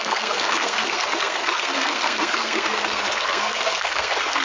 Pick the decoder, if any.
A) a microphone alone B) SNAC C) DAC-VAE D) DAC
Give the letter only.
B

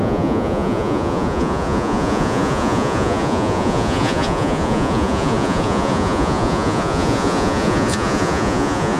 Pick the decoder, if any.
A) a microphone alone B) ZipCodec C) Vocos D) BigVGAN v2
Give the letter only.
C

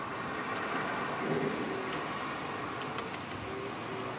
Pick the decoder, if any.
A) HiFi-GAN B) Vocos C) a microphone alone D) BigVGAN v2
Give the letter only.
C